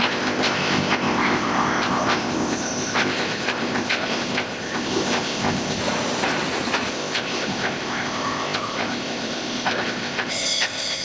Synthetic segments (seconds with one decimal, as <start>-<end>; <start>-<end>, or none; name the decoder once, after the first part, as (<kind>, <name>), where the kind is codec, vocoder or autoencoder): 0.0-5.8 (codec, ZipCodec); 6.9-11.0